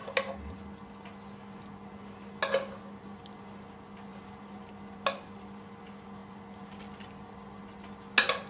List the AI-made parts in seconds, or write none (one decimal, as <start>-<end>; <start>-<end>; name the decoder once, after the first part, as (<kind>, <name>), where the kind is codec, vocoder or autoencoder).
none